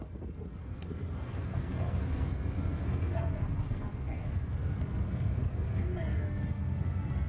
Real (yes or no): no